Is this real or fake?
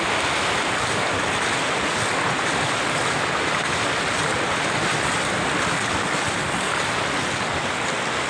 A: real